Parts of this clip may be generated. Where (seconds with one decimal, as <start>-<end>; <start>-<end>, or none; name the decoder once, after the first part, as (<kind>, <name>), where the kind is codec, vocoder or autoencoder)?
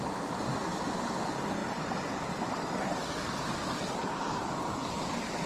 none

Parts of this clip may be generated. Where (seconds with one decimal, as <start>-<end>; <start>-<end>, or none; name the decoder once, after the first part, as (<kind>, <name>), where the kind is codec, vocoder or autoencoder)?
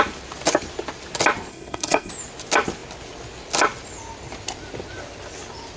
1.5-2.1 (codec, SNAC)